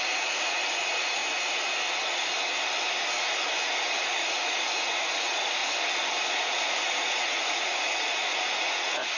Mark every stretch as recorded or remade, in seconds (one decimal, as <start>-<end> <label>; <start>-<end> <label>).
0.0-1.2 remade; 1.2-4.0 recorded; 4.0-5.6 remade; 5.6-6.3 recorded; 6.3-9.2 remade